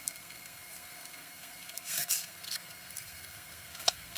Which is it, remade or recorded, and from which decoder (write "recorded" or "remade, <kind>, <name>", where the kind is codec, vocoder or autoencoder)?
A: remade, codec, SNAC